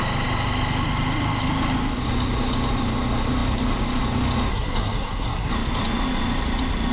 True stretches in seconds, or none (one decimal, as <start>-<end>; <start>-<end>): 0.0-4.5; 5.5-6.9